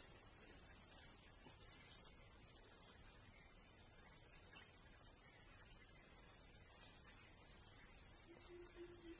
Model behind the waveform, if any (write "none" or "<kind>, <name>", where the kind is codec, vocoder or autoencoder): none